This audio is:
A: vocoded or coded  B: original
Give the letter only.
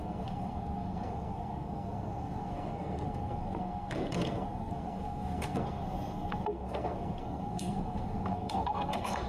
A